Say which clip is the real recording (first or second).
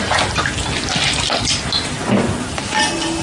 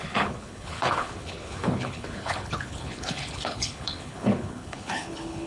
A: first